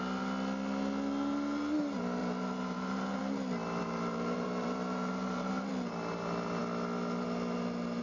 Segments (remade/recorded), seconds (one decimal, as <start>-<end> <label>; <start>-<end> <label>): 0.0-2.2 recorded; 2.2-3.2 remade; 3.2-3.8 recorded; 3.8-5.5 remade; 5.5-8.0 recorded